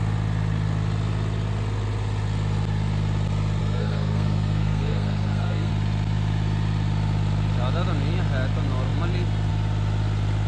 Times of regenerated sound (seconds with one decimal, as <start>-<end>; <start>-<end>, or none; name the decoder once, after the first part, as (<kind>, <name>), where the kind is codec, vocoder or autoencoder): 3.6-5.7 (codec, SNAC)